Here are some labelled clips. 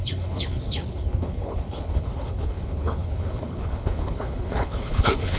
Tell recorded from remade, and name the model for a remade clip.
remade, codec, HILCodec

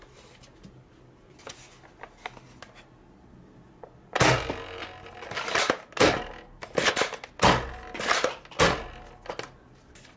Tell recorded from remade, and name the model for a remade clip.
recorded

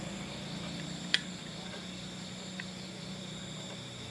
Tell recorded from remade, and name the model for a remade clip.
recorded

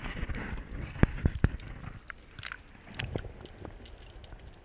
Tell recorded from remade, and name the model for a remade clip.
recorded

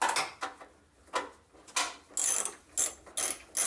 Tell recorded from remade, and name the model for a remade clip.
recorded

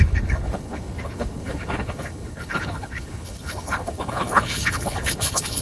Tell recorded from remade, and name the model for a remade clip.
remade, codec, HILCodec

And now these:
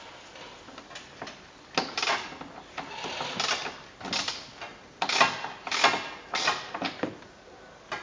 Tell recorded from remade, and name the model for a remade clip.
recorded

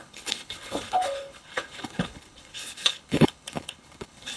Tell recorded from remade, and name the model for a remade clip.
remade, codec, HILCodec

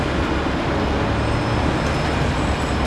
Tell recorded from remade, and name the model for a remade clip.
recorded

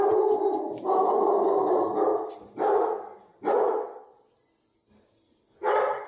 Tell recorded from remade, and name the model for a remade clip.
recorded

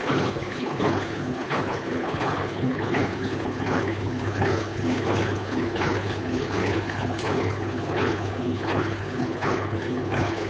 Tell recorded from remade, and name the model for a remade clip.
remade, codec, HILCodec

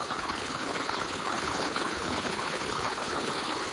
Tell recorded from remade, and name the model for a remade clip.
remade, codec, HILCodec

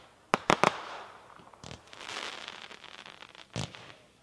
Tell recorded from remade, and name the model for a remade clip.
recorded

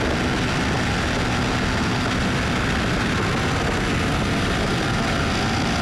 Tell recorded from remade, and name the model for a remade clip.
recorded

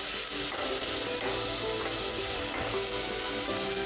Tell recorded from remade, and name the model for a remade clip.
recorded